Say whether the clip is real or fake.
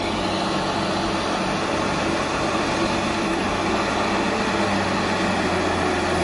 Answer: real